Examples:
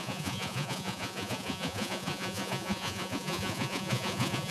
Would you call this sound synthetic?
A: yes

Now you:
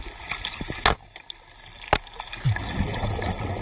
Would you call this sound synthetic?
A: no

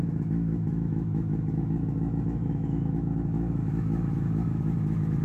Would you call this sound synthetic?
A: yes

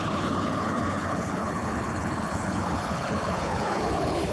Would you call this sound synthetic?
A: yes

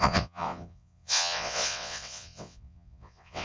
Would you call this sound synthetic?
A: yes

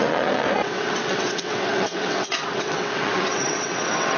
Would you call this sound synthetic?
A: yes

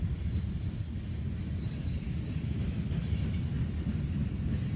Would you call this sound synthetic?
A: no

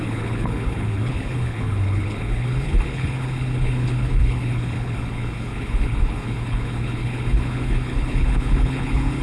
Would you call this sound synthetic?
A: yes